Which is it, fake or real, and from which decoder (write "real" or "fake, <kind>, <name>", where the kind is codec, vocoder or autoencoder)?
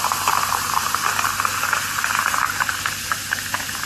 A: real